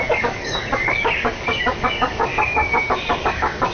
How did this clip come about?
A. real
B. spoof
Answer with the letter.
B